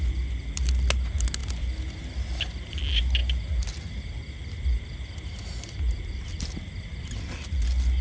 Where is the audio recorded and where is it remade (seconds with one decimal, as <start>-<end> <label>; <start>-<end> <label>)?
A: 0.0-8.0 recorded